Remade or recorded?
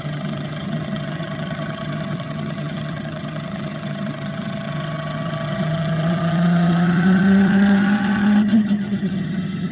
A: remade